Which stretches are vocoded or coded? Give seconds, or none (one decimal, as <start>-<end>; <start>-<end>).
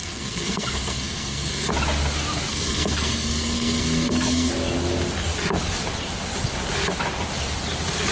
0.0-1.7; 2.5-4.5